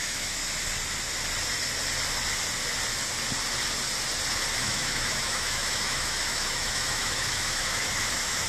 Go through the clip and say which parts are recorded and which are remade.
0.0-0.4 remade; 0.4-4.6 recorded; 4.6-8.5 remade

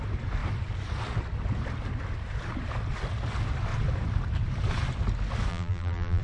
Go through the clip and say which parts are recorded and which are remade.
0.0-5.5 recorded; 5.5-6.2 remade

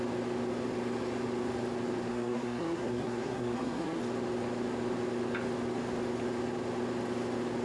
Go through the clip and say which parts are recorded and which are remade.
0.0-2.1 recorded; 2.1-4.0 remade; 4.0-7.6 recorded

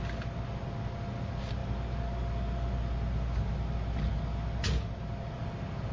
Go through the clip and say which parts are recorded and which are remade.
0.0-5.9 recorded

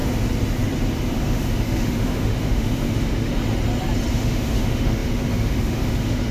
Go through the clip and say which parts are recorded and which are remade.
0.0-1.1 recorded; 1.1-3.3 remade; 3.3-4.1 recorded; 4.1-6.3 remade